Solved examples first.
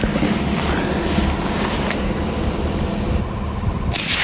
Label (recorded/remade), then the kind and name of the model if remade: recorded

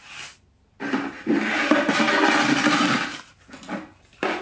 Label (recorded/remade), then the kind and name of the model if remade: recorded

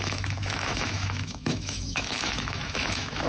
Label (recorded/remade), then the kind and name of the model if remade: remade, autoencoder, DAC-VAE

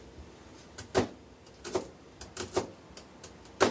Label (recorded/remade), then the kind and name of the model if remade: recorded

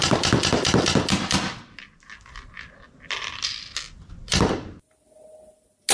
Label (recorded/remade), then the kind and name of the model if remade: recorded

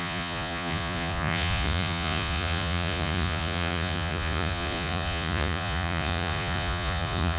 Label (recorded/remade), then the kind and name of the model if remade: remade, vocoder, Vocos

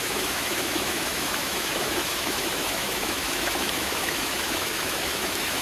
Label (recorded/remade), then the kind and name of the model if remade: remade, autoencoder, DAC-VAE